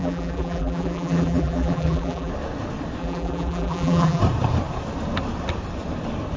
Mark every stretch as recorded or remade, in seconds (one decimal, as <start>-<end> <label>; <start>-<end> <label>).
0.0-2.3 remade; 2.3-3.0 recorded; 3.0-4.2 remade; 4.2-6.4 recorded